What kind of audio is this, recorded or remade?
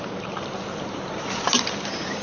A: remade